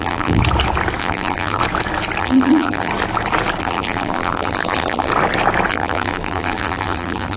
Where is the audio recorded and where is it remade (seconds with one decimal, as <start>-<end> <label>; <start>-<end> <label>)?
0.0-0.4 remade; 0.4-1.0 recorded; 1.0-1.6 remade; 1.6-2.2 recorded; 2.2-2.9 remade; 2.9-3.6 recorded; 3.6-5.1 remade; 5.1-5.7 recorded; 5.7-7.4 remade